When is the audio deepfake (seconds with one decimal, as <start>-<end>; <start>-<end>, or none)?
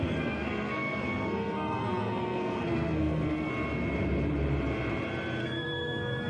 0.0-3.5; 5.4-6.3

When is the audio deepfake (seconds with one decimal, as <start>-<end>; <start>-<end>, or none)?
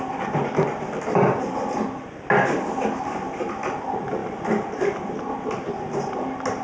none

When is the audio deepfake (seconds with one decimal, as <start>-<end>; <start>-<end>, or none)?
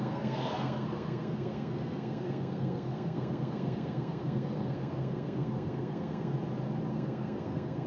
0.0-6.3; 6.9-7.9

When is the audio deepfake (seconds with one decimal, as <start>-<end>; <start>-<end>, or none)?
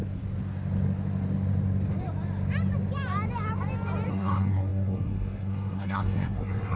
4.1-6.8